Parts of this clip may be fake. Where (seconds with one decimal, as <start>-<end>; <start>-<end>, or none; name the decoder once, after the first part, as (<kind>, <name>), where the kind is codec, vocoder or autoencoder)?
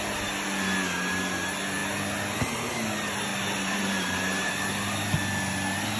3.3-4.5 (vocoder, BigVGAN v2)